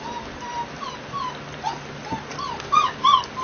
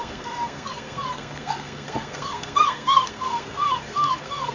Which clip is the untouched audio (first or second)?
first